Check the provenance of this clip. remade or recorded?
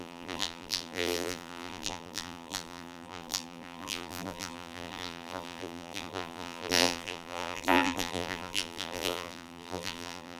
remade